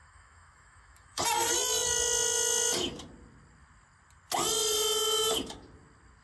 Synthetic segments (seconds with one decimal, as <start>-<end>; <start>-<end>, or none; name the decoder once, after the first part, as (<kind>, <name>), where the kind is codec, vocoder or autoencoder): 0.0-1.2 (autoencoder, DAC-VAE)